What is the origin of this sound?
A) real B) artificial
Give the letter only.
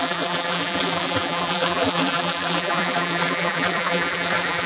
B